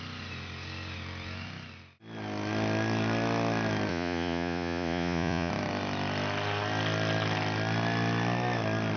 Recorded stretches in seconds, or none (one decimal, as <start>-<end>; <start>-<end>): 0.0-3.9; 5.5-9.0

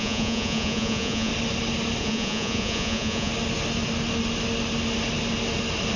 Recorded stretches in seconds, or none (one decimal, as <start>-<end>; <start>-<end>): 1.3-2.0; 3.3-6.0

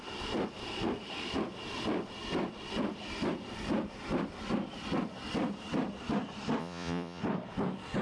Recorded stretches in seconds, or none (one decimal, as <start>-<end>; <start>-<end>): 0.0-6.6; 7.2-8.0

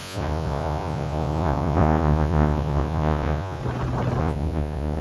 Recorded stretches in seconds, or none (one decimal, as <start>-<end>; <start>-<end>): 3.6-4.2

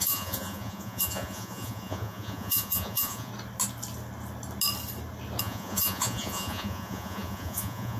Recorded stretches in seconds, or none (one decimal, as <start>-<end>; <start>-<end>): 3.3-5.4

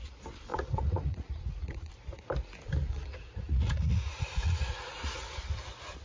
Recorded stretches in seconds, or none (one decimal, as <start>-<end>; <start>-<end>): 0.0-0.5; 1.9-3.1; 5.2-6.0

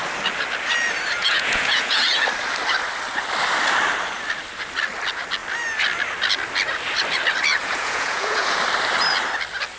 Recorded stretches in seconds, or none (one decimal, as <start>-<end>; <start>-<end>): 0.0-1.2; 2.2-7.6; 8.6-9.8

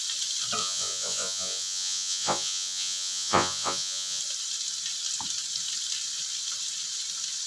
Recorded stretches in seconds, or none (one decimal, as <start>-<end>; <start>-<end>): 0.0-0.6; 4.2-7.5